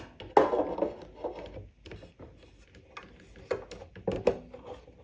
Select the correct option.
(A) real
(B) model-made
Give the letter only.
A